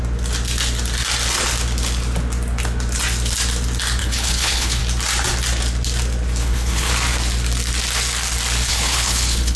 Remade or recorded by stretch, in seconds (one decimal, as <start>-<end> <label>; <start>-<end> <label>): 0.0-4.0 recorded; 4.0-4.8 remade; 4.8-6.4 recorded; 6.4-6.9 remade; 6.9-8.7 recorded; 8.7-9.6 remade